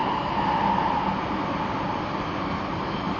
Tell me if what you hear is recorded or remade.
recorded